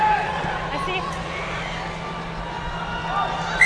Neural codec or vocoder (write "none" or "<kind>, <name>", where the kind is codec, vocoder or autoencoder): none